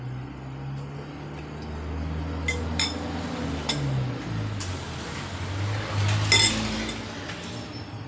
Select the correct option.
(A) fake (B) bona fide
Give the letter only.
B